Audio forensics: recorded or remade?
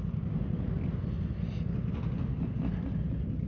recorded